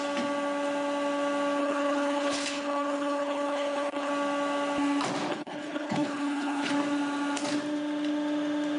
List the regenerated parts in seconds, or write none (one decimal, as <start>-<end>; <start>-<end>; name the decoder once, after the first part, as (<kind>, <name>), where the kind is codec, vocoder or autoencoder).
1.6-4.1 (codec, HILCodec); 5.3-6.7